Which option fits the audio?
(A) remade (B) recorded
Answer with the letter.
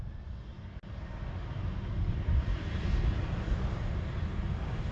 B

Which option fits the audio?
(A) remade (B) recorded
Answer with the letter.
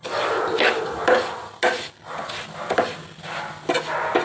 B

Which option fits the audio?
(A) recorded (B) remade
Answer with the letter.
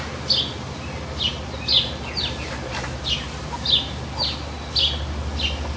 A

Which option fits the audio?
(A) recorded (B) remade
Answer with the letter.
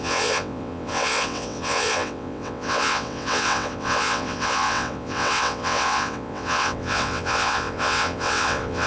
B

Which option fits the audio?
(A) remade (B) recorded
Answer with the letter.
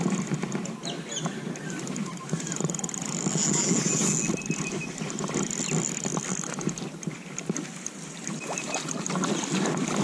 B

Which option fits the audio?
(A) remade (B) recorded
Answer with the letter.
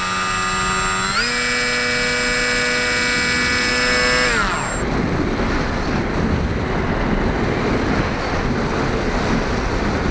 B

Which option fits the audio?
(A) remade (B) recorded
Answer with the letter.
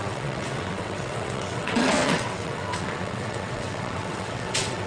A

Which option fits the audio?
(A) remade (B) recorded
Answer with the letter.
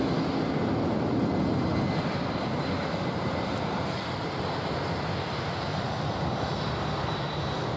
B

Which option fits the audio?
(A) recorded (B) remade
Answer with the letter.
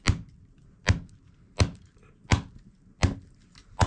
A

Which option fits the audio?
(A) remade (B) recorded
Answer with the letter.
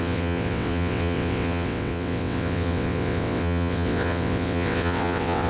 A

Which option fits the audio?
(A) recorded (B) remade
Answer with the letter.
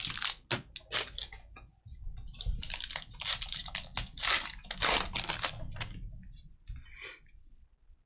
A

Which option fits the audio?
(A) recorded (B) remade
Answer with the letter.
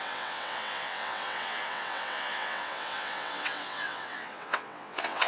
B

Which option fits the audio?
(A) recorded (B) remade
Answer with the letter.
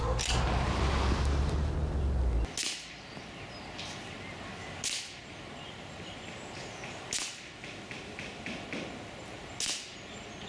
A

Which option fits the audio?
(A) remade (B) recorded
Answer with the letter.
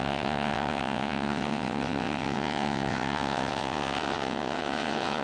A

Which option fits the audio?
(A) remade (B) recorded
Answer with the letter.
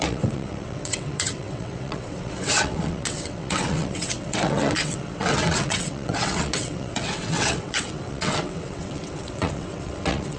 A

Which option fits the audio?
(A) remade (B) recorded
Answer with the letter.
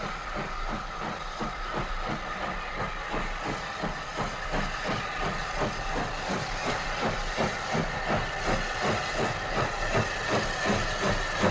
B